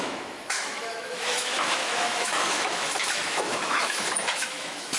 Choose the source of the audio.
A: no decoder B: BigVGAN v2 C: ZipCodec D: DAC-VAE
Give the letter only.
D